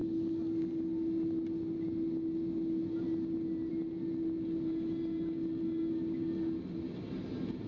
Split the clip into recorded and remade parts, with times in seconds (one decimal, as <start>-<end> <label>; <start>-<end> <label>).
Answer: 0.0-7.7 recorded